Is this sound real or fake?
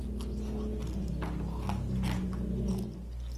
real